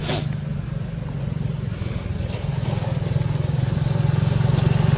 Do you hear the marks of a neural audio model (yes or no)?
no